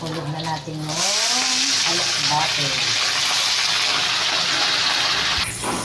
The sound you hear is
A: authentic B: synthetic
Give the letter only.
A